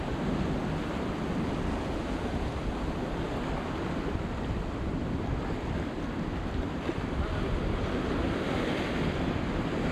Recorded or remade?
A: recorded